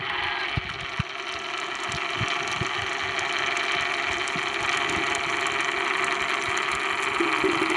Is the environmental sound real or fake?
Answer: real